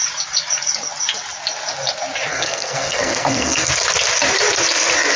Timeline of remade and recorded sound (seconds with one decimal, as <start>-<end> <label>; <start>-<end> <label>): 0.0-2.3 recorded; 2.3-3.7 remade; 3.7-5.2 recorded